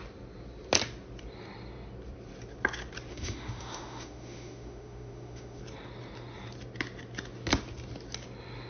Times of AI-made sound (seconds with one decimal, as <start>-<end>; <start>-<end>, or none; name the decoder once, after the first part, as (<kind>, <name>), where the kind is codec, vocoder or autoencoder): 3.1-5.6 (autoencoder, DAC-VAE)